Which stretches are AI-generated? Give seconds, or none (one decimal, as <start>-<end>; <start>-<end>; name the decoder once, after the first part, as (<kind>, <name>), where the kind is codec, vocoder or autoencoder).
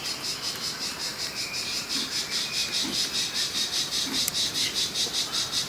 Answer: 0.0-5.7 (vocoder, BigVGAN v2)